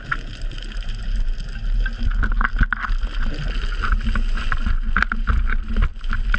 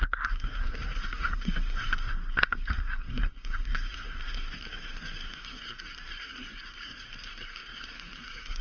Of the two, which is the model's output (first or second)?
second